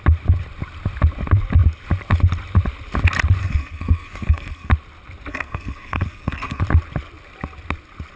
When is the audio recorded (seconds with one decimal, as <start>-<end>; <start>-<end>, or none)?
0.0-3.4; 4.7-5.3; 6.6-8.2